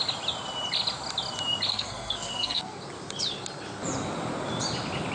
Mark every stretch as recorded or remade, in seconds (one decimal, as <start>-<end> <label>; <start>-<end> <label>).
0.0-1.7 recorded; 1.7-2.8 remade; 2.8-5.1 recorded

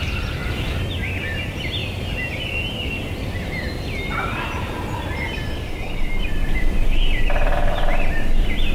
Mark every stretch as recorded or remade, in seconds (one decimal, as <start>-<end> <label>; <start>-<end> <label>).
0.0-0.4 remade; 0.4-1.0 recorded; 1.0-1.8 remade; 1.8-6.2 recorded; 6.2-8.7 remade

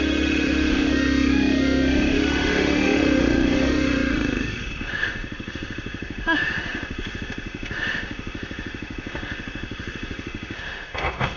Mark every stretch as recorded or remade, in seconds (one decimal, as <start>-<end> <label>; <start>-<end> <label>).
0.0-11.4 remade

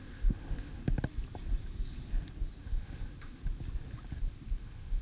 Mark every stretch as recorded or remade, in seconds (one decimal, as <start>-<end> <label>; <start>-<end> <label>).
0.0-0.8 remade; 0.8-2.6 recorded; 2.6-3.4 remade; 3.4-4.6 recorded; 4.6-5.0 remade

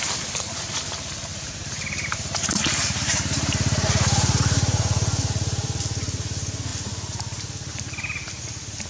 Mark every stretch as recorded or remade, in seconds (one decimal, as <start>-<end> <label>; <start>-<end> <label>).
0.0-1.3 recorded; 1.3-5.8 remade; 5.8-8.9 recorded

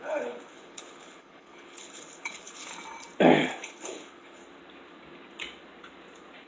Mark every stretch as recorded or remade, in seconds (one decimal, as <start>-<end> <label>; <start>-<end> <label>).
0.0-2.7 remade; 2.7-3.6 recorded; 3.6-4.4 remade; 4.4-6.5 recorded

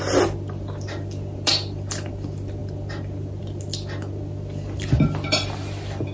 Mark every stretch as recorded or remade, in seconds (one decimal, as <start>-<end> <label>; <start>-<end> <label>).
0.0-6.1 recorded

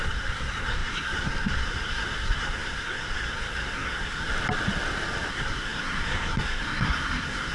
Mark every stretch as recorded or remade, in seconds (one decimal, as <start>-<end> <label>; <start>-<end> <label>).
0.0-4.3 remade; 4.3-5.3 recorded; 5.3-7.5 remade